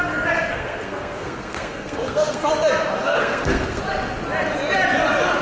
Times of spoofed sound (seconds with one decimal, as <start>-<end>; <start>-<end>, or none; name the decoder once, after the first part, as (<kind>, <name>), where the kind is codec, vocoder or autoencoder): 0.5-2.5 (codec, SNAC); 3.0-3.8